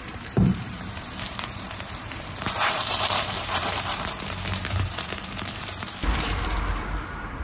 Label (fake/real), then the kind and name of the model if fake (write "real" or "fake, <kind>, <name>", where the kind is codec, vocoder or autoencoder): fake, vocoder, BigVGAN v2